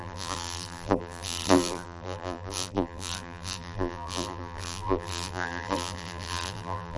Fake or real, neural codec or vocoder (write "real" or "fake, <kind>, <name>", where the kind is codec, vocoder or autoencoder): fake, vocoder, BigVGAN v2